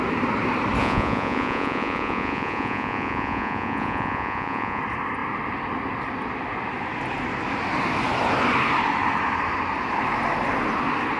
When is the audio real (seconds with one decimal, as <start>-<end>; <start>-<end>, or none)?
0.0-0.8; 4.8-11.2